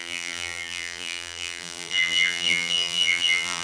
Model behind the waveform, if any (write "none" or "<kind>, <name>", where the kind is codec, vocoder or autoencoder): vocoder, BigVGAN v2